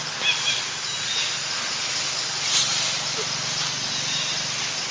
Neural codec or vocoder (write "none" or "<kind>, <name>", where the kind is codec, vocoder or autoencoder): none